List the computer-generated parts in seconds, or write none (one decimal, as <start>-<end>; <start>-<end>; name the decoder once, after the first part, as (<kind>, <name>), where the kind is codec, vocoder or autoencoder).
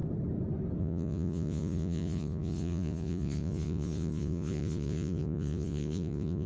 0.8-6.5 (vocoder, Vocos)